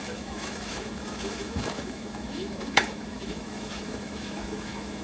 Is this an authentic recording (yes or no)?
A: no